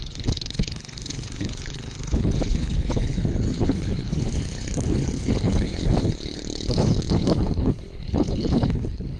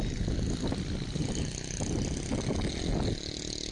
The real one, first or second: second